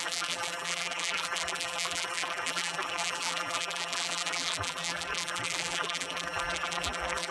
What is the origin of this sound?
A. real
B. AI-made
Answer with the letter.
B